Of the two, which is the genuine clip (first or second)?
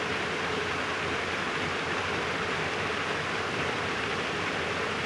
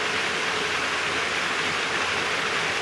second